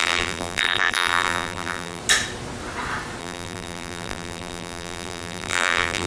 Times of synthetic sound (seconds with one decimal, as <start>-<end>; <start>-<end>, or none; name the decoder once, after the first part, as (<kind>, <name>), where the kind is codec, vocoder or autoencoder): 0.0-2.0 (vocoder, BigVGAN v2); 3.2-6.1